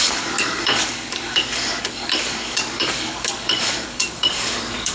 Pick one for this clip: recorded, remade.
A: remade